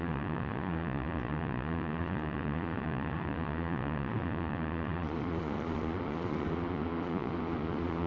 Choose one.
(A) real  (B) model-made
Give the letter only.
B